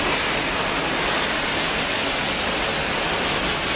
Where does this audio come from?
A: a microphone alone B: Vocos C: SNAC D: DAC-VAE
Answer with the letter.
A